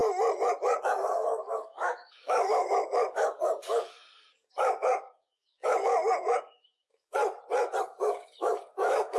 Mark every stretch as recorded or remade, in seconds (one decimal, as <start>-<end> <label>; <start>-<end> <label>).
0.0-0.6 recorded; 0.6-7.2 remade; 7.2-7.8 recorded; 7.8-9.2 remade